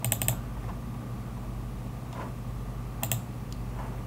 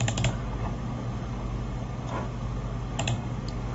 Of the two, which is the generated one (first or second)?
second